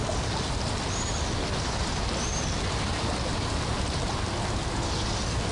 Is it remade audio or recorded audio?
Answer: recorded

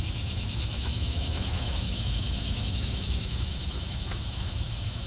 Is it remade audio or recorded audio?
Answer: remade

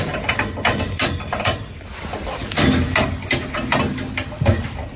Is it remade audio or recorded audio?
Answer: recorded